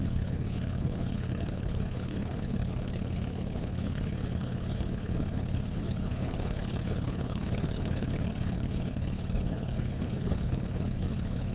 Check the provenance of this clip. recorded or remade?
remade